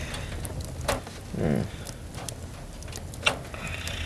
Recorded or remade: recorded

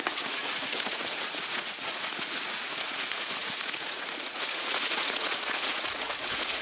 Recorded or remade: remade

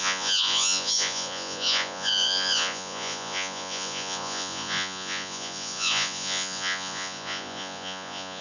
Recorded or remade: remade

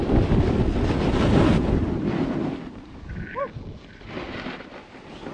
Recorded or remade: recorded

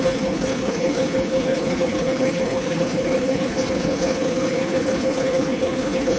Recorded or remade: remade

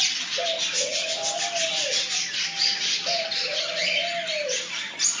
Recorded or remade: recorded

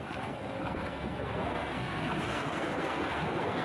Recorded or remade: remade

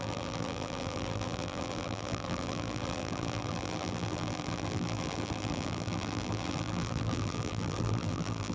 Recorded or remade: remade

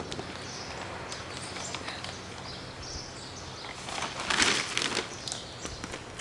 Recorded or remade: recorded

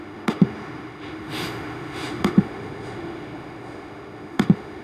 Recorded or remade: remade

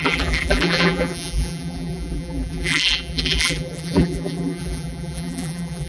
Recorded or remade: remade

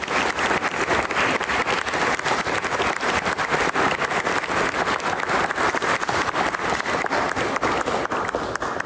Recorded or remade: recorded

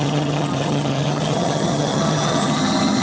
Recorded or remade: remade